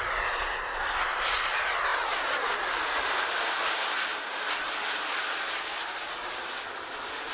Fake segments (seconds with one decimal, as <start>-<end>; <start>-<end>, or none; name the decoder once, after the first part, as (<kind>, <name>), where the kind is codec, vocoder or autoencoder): none